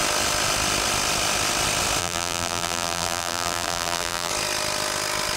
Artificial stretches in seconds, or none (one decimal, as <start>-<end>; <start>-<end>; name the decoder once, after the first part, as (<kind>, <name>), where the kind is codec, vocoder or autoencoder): 2.0-4.3 (vocoder, BigVGAN v2)